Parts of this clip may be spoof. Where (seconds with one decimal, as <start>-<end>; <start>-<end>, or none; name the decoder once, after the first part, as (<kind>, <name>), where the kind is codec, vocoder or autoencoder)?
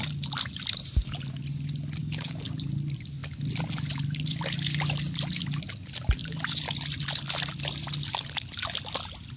2.0-2.5 (codec, DAC)